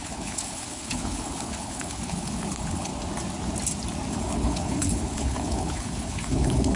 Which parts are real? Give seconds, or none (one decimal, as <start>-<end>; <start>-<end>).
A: 2.9-4.1